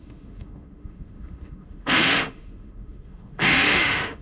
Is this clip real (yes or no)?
no